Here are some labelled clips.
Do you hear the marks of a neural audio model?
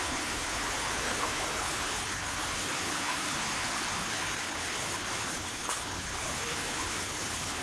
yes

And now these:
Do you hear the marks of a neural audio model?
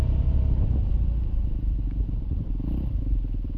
no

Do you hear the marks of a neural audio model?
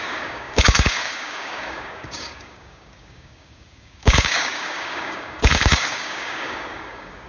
yes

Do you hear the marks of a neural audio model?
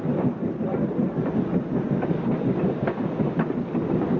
no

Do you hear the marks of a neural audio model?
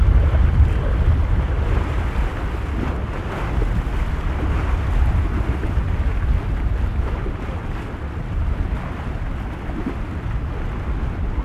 no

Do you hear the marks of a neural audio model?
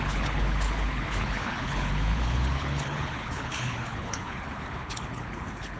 yes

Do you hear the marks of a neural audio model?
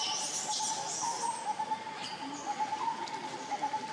no